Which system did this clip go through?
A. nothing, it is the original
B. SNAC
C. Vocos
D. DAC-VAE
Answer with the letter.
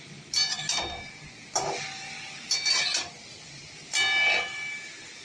A